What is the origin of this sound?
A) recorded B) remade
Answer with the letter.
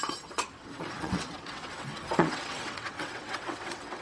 B